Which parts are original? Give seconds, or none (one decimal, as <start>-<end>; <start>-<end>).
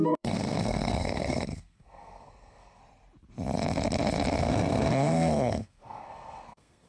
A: 2.8-4.4